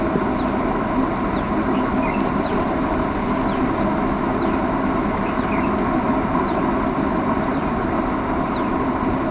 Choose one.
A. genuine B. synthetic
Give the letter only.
A